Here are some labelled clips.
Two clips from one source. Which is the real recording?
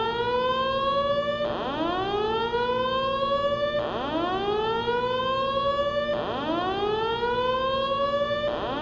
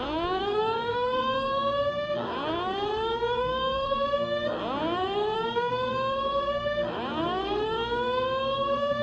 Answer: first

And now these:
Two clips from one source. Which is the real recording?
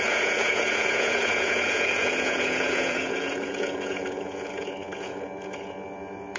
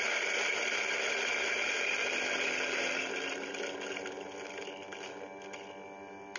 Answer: second